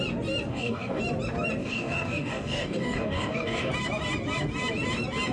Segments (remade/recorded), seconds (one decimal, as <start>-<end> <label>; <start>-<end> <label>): 0.0-0.5 recorded; 0.5-1.0 remade; 1.0-1.6 recorded; 1.6-3.7 remade; 3.7-5.3 recorded